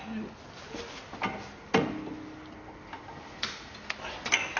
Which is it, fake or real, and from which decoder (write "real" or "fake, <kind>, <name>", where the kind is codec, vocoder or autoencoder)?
real